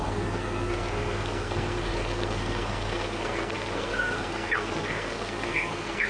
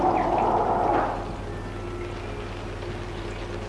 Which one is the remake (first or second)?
first